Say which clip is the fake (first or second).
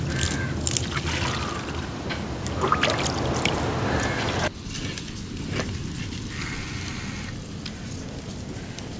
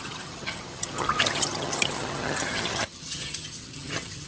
second